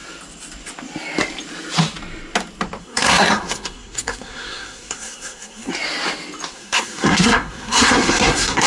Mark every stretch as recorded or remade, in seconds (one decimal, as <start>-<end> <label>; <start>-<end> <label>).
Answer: 0.0-2.8 recorded; 2.8-5.7 remade; 5.7-6.5 recorded; 6.5-8.7 remade